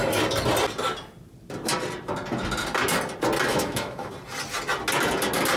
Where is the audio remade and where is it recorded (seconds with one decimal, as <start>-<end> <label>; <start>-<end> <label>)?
0.0-3.5 recorded; 3.5-4.1 remade; 4.1-5.6 recorded